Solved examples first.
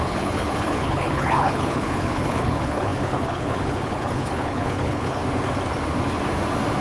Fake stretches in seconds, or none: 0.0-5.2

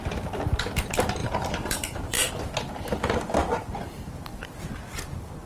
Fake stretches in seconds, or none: 1.2-2.3